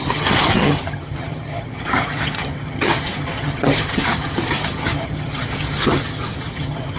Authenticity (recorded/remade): remade